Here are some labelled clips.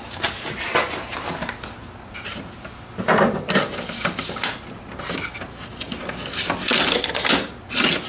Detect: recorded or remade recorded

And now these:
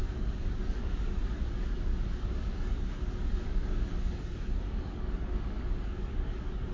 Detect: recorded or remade remade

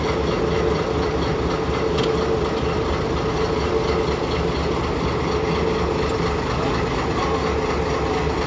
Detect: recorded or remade recorded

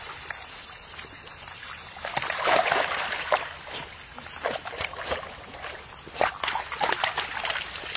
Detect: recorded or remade remade